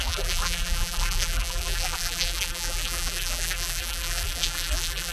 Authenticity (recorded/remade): remade